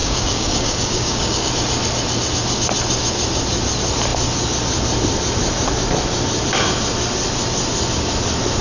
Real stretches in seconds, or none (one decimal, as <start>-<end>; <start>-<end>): 1.5-8.6